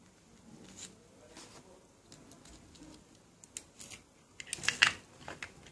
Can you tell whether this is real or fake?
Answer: real